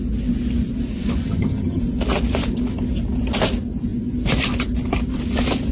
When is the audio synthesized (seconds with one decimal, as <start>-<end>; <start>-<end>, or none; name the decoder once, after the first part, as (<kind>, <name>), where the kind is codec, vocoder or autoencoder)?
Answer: 1.2-1.8 (vocoder, HiFi-GAN)

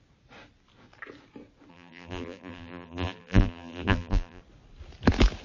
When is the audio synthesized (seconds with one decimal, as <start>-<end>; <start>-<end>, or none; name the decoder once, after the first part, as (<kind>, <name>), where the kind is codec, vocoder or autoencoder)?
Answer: 1.7-4.4 (vocoder, BigVGAN v2)